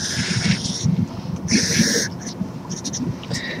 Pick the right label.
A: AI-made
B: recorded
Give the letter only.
B